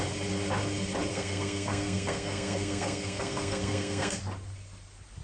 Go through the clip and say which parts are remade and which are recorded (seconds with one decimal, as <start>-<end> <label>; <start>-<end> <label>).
0.0-1.1 recorded; 1.1-4.2 remade; 4.2-5.2 recorded